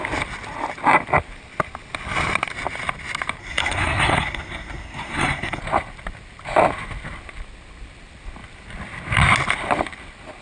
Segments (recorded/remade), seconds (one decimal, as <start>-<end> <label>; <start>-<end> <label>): 0.0-3.4 recorded; 3.4-5.6 remade; 5.6-10.4 recorded